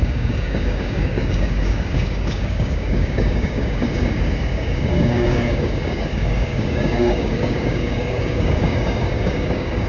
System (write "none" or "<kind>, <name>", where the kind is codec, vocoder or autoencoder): codec, DAC